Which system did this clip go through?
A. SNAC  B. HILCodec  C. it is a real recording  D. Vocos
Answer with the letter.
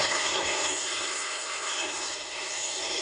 A